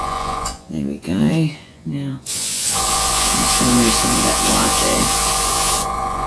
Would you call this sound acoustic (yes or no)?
no